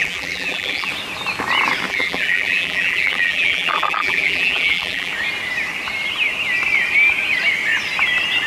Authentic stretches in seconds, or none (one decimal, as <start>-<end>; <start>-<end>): 0.9-1.9; 5.1-8.5